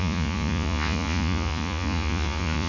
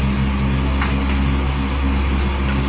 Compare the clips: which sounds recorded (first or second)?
second